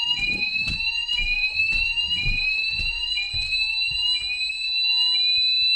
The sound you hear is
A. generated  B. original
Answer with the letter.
B